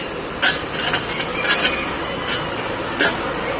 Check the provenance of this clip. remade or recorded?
recorded